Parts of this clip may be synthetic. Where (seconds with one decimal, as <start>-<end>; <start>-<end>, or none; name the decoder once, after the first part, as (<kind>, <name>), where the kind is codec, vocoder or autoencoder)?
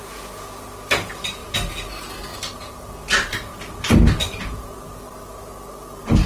none